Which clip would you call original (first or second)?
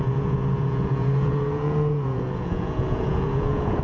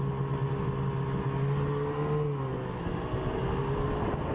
second